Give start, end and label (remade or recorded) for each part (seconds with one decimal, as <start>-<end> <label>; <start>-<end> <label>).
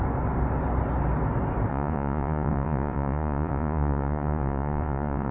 0.0-1.7 recorded; 1.7-5.3 remade